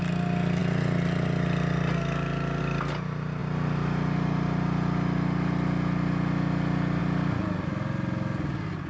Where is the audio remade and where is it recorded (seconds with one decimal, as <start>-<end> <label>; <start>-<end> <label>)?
0.0-8.9 recorded